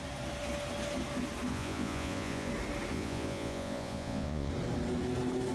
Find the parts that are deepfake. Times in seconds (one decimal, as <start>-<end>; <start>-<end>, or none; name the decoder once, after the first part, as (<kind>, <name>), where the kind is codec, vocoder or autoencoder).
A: 1.5-2.5 (vocoder, Vocos); 2.9-4.5